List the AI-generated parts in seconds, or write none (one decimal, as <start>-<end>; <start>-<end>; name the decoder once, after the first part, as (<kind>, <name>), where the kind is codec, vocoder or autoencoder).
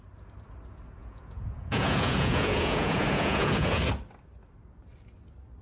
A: 1.0-3.8 (vocoder, Vocos)